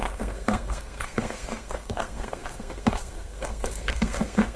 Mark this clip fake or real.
fake